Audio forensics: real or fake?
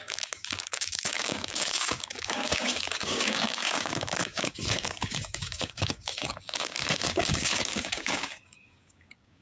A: fake